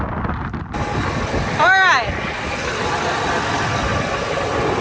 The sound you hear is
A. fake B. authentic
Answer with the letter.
B